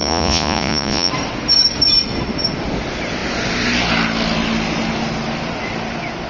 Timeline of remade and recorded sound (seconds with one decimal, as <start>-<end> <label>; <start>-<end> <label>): 0.0-1.1 remade; 1.1-6.3 recorded